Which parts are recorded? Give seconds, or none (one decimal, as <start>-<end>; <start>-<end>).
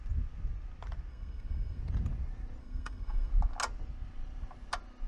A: 0.0-1.1; 1.8-2.6; 3.3-5.1